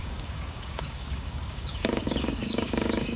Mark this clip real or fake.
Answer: fake